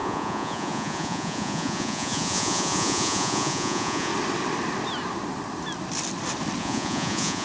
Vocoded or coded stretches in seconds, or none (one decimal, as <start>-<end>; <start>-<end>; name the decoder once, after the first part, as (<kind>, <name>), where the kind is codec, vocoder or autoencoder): 0.0-4.1 (vocoder, Vocos); 6.6-7.4